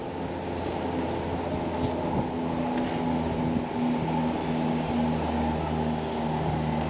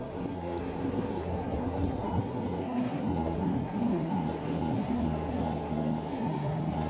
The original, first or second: first